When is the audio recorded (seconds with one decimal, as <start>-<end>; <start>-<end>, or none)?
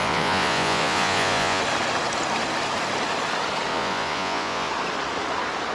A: 1.6-3.7; 4.7-5.7